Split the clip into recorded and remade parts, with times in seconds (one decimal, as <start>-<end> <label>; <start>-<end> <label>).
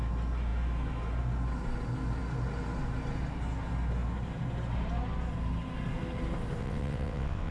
0.0-6.6 recorded; 6.6-7.5 remade